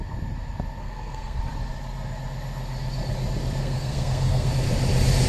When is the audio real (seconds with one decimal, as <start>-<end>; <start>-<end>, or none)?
0.0-0.8; 1.4-3.6; 4.5-5.3